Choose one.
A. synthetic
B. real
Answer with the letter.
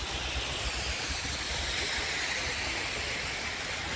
B